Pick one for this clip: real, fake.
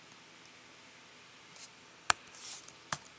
real